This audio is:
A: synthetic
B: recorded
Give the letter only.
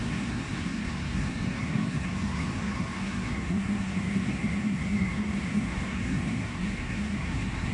A